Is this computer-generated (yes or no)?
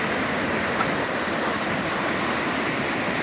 no